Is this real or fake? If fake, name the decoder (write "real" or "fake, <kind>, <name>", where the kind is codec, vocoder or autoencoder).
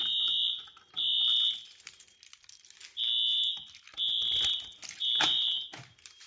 real